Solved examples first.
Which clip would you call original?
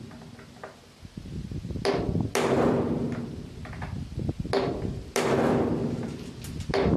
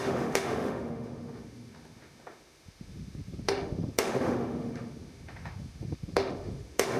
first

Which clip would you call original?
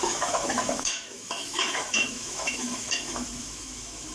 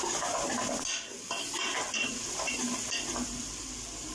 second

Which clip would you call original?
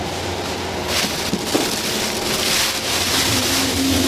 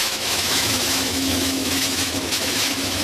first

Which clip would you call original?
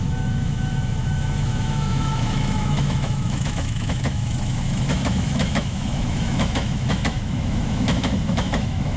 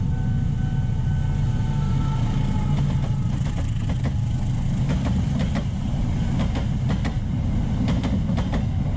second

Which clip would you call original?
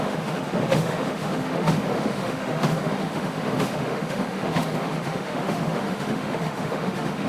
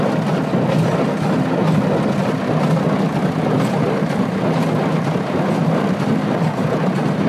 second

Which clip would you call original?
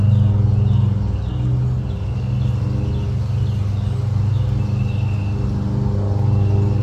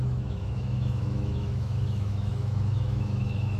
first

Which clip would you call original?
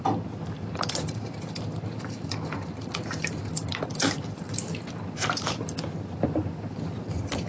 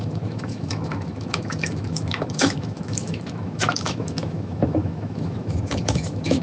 first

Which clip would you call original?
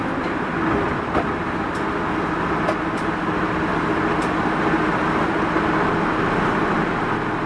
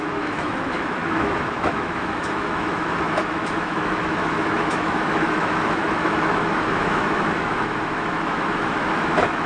first